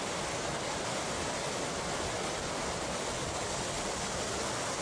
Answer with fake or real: real